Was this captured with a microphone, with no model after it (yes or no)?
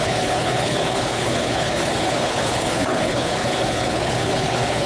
no